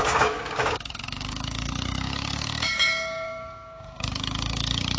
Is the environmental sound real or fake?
fake